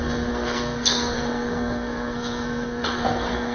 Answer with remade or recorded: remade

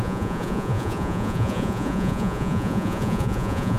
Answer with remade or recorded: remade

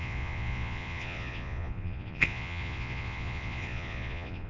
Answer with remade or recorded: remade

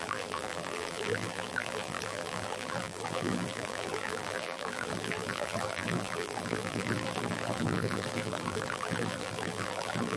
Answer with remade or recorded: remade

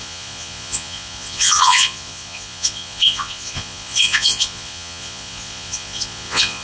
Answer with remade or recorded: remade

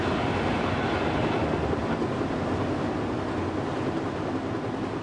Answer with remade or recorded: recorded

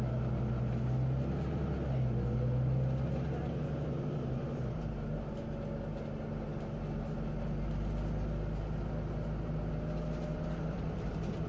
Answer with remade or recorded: recorded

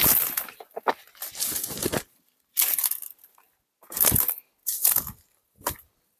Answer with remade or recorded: recorded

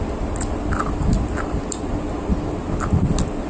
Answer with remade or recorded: recorded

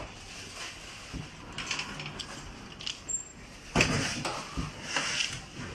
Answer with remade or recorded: recorded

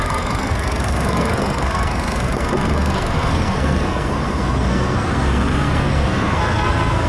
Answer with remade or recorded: remade